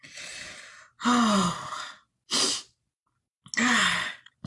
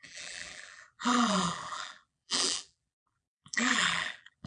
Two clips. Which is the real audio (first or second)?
first